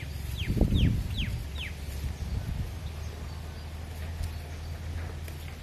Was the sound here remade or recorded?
recorded